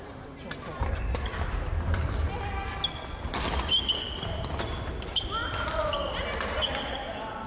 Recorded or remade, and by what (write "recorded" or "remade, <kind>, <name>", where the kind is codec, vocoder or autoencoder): recorded